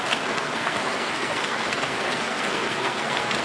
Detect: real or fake fake